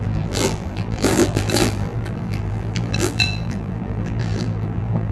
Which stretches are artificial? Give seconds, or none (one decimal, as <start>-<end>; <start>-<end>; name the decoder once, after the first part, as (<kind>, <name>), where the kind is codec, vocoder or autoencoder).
0.0-5.1 (vocoder, BigVGAN v2)